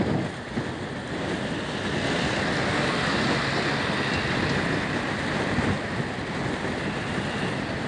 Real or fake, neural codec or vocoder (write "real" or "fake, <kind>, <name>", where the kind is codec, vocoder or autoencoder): real